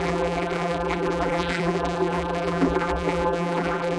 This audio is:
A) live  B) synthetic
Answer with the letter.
B